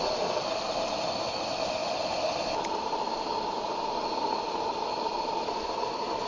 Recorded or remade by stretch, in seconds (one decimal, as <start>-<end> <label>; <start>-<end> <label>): 0.0-6.3 recorded